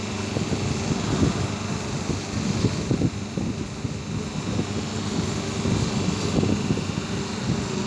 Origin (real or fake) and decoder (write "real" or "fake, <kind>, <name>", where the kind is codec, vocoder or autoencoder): real